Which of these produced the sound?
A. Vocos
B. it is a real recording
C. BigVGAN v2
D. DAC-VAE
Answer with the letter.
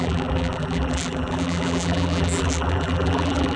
C